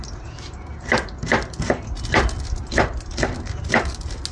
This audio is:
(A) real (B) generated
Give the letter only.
A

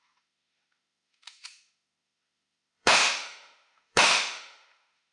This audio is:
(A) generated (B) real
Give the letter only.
A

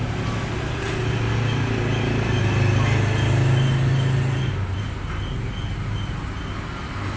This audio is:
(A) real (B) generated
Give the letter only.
A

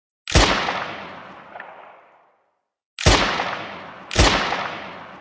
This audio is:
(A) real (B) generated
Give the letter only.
A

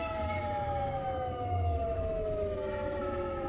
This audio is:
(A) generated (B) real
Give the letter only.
A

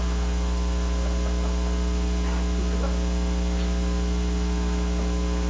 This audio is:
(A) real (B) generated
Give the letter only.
A